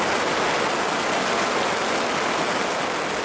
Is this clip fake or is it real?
real